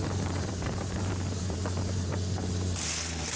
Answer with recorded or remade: remade